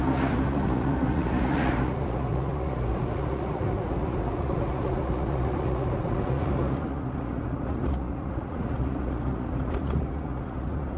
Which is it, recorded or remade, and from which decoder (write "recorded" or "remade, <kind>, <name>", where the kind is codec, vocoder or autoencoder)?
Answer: remade, vocoder, Vocos